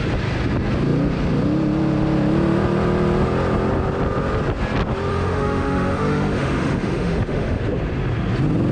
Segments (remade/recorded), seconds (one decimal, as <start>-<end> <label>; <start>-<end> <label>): 0.0-5.1 recorded; 5.1-7.6 remade; 7.6-8.7 recorded